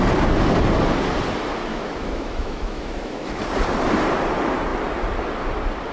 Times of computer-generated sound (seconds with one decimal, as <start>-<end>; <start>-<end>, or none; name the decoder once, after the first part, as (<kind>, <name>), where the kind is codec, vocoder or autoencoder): 1.7-3.4 (autoencoder, DAC-VAE)